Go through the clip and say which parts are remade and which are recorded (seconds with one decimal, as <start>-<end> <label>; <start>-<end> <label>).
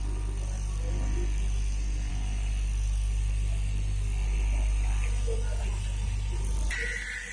0.0-7.3 recorded